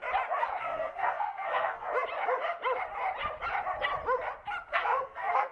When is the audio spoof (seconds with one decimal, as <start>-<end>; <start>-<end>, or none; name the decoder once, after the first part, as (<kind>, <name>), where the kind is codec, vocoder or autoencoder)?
0.6-1.9 (codec, SNAC); 4.7-5.5